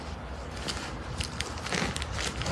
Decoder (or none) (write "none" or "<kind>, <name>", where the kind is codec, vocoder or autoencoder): none